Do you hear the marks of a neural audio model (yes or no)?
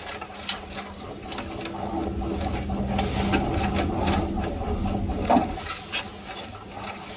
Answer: no